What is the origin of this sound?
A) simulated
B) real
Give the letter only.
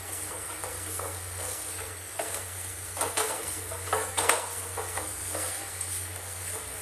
A